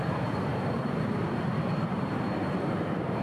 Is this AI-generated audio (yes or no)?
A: yes